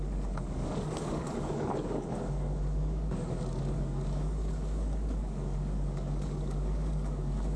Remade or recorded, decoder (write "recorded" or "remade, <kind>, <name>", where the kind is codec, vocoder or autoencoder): remade, codec, DAC